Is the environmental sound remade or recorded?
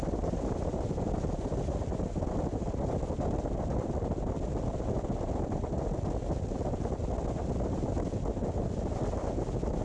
recorded